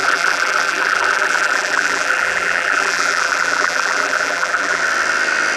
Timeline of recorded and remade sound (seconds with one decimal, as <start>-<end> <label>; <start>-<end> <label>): 0.0-4.8 remade; 4.8-5.6 recorded